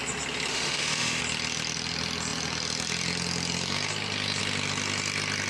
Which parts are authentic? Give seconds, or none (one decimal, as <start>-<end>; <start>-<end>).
0.0-0.5; 1.2-5.5